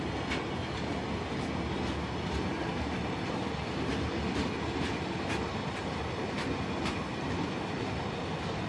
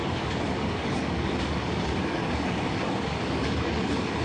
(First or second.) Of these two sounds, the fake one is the second